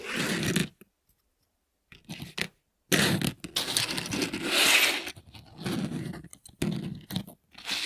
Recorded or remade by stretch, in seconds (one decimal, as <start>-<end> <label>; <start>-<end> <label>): 0.0-7.9 recorded